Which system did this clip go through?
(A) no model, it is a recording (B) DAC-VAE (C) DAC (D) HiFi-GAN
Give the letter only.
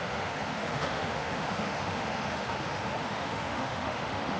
B